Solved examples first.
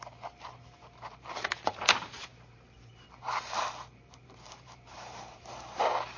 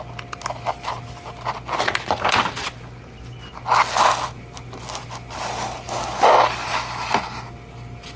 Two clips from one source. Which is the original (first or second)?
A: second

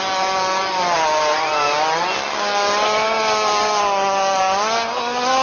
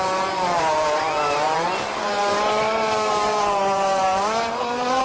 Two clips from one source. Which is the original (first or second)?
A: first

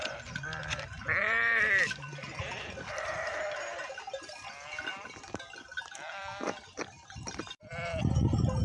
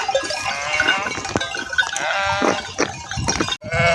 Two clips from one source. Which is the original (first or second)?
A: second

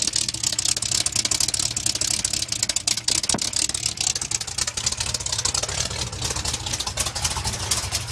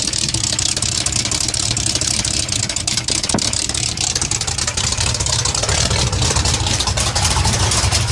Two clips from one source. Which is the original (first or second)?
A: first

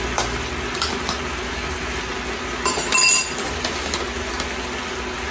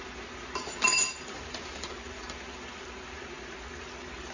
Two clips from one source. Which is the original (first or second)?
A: first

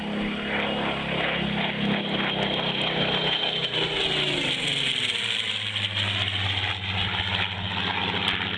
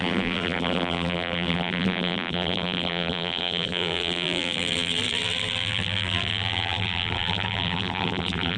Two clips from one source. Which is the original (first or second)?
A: first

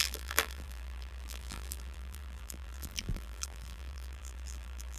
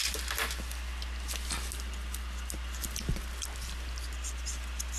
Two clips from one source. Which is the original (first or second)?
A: second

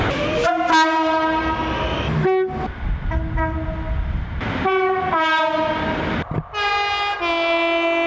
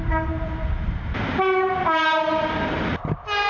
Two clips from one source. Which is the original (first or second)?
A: first